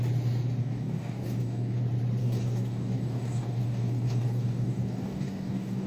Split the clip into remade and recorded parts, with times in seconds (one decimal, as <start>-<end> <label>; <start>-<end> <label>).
0.0-0.6 recorded; 0.6-1.8 remade; 1.8-2.2 recorded; 2.2-5.9 remade